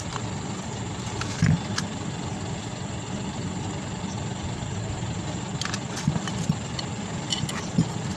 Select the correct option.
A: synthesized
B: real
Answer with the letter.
B